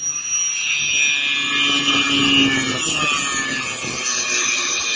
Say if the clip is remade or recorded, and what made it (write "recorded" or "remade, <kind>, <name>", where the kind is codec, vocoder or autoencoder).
recorded